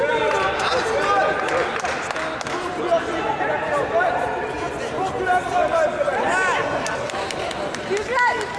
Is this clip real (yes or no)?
yes